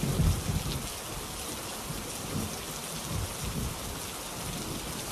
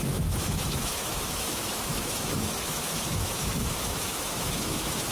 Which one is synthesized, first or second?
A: second